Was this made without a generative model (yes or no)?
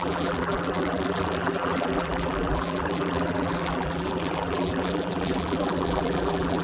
no